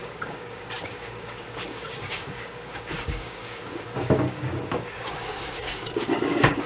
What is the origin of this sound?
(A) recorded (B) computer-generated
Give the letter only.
B